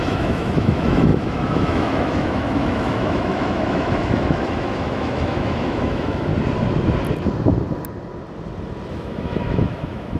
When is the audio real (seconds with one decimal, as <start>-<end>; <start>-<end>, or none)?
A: 6.3-8.9